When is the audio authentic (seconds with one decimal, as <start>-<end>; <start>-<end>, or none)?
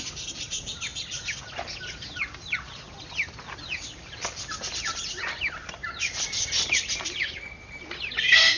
0.0-8.6